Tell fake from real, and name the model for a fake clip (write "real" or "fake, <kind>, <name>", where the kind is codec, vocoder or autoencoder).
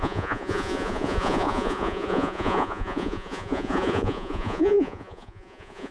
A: fake, vocoder, Vocos